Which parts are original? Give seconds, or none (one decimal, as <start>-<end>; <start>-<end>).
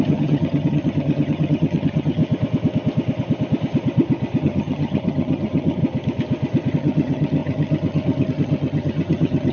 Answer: 2.2-4.4; 5.8-6.7